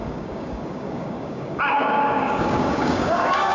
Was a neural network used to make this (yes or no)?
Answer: yes